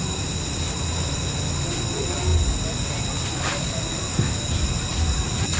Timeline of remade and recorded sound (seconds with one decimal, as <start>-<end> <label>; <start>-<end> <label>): 0.0-5.6 recorded